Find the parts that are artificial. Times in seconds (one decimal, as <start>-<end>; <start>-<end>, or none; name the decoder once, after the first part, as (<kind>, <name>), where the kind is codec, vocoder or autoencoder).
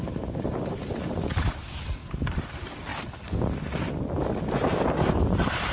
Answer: 0.0-2.0 (vocoder, BigVGAN v2); 2.5-2.9; 4.8-5.7